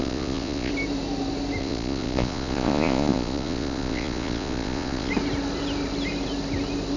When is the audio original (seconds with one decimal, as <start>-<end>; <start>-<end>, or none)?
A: 0.7-1.6; 5.1-7.0